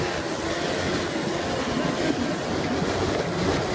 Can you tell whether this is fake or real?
real